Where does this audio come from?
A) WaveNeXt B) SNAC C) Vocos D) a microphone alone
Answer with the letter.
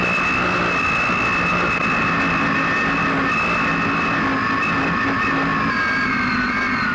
D